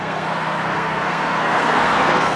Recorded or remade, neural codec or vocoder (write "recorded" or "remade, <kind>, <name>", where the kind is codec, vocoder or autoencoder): remade, codec, SNAC